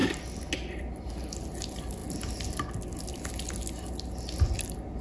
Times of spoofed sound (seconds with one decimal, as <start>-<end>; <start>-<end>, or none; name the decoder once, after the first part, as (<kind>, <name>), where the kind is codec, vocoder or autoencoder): none